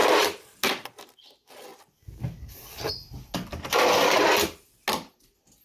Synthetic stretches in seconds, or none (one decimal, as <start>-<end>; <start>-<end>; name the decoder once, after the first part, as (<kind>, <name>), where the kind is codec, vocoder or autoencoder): none